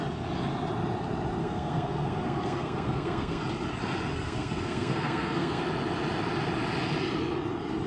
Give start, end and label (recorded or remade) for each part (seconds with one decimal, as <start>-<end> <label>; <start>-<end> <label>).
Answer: 0.0-1.4 recorded; 1.4-3.4 remade; 3.4-4.1 recorded; 4.1-5.6 remade; 5.6-7.9 recorded